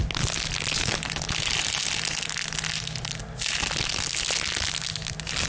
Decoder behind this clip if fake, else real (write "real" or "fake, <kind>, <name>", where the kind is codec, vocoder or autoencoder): real